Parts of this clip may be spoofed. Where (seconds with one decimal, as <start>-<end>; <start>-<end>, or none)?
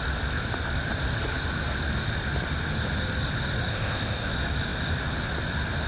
3.7-4.3